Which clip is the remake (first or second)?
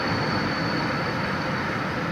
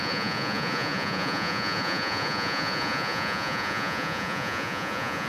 second